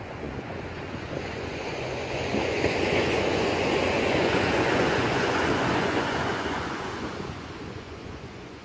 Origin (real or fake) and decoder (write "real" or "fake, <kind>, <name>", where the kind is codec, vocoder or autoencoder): fake, vocoder, Vocos